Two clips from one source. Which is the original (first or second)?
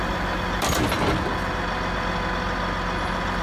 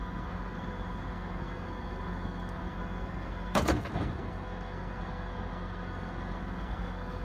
first